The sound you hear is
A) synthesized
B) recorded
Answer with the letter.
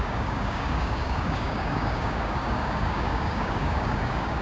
A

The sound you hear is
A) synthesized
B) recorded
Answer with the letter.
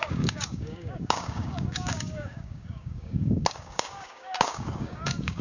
A